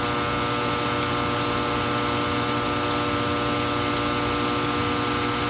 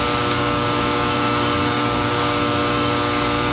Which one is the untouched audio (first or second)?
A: first